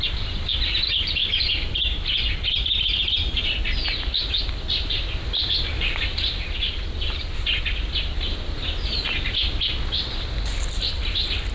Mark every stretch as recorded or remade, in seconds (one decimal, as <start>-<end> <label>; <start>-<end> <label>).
0.0-0.5 recorded; 0.5-3.6 remade; 3.6-11.5 recorded

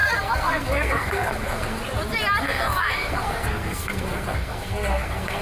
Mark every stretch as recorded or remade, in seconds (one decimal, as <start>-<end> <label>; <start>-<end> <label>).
0.0-1.8 remade; 1.8-2.4 recorded; 2.4-5.4 remade

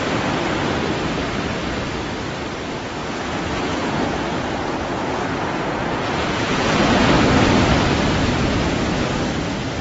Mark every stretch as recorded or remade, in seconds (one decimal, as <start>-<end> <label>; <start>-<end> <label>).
0.0-3.0 recorded; 3.0-7.1 remade; 7.1-8.2 recorded; 8.2-8.8 remade; 8.8-9.8 recorded

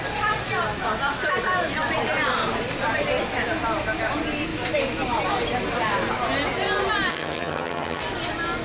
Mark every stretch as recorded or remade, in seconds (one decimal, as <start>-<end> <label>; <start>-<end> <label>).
0.0-7.1 recorded; 7.1-8.0 remade; 8.0-8.6 recorded

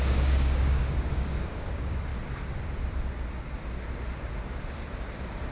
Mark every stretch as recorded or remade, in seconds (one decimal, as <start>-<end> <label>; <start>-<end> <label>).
0.0-2.1 remade; 2.1-5.5 recorded